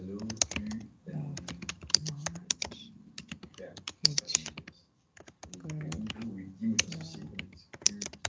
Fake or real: real